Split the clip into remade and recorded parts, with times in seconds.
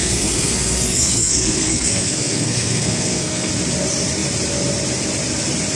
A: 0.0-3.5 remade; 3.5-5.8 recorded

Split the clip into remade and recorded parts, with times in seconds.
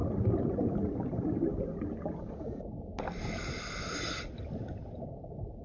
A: 0.0-5.6 recorded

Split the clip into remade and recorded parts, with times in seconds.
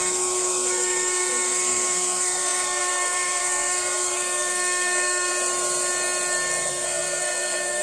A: 0.0-5.3 remade; 5.3-6.7 recorded; 6.7-7.8 remade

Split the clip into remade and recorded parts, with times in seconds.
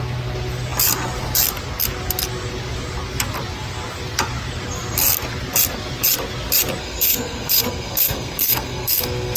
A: 0.0-6.8 recorded; 6.8-9.4 remade